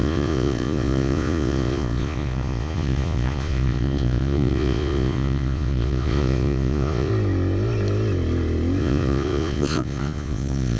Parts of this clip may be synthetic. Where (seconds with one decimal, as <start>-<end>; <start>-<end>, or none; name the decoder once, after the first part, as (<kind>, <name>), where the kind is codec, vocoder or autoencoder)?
0.0-7.1 (vocoder, Vocos); 8.8-10.8